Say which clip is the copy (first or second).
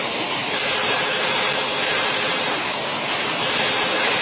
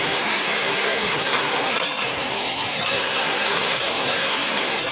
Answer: second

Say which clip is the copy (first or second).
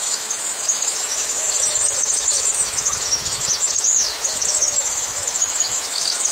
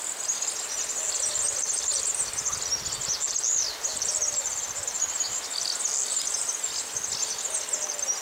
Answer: first